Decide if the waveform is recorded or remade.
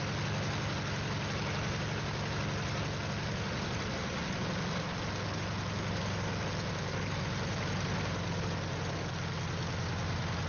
recorded